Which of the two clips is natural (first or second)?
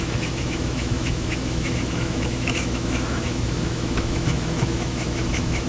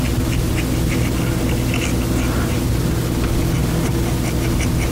second